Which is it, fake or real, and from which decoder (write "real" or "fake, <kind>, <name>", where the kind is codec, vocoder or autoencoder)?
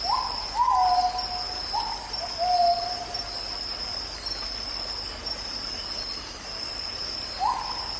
real